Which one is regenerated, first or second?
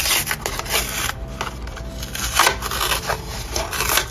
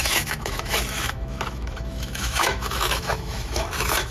second